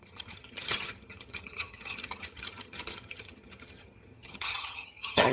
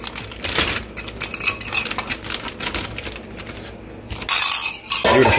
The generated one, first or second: first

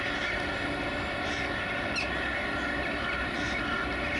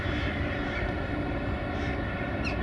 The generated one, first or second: second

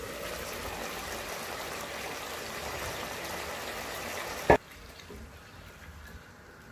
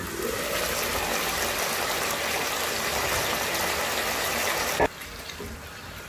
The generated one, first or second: first